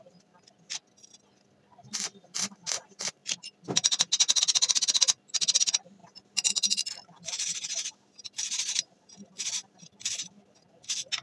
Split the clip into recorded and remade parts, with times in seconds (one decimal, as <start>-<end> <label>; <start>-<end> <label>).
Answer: 0.0-11.2 recorded